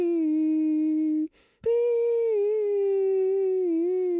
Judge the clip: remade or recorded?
remade